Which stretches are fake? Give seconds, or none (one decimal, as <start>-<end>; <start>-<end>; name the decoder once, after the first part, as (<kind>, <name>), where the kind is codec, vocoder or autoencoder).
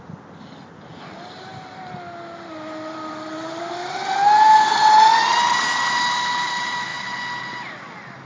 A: none